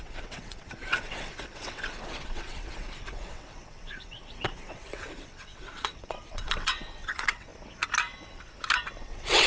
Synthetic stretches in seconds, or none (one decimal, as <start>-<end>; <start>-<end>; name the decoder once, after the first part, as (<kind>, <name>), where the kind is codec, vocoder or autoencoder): 0.0-7.5 (vocoder, WaveNeXt); 9.0-9.5